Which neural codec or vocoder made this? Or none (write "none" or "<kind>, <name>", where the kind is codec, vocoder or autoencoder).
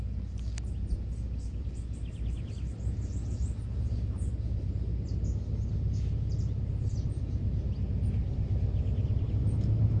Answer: none